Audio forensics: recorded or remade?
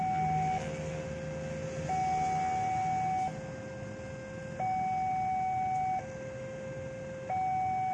recorded